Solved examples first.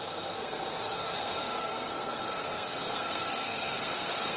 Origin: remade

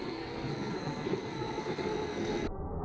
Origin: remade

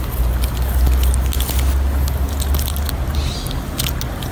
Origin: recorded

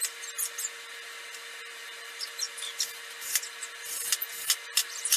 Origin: recorded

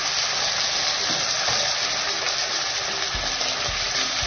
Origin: recorded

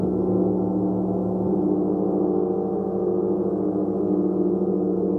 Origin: recorded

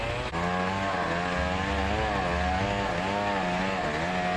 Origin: recorded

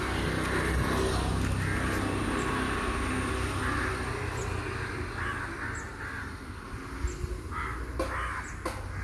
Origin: recorded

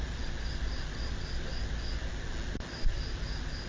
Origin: recorded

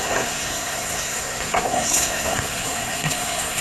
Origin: remade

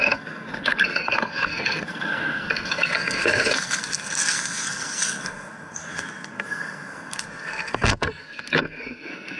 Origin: remade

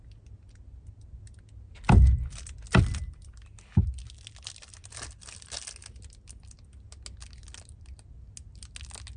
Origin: recorded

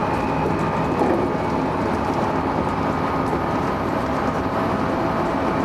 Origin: recorded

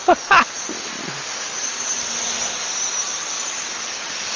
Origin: recorded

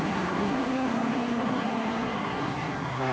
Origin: remade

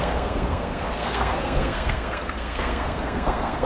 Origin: remade